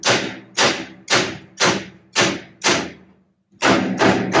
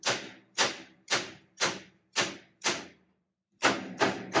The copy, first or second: second